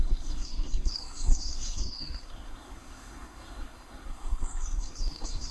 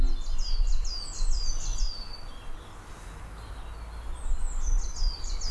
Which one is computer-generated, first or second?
first